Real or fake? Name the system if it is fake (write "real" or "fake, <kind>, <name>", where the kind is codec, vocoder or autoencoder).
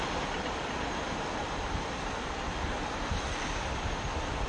real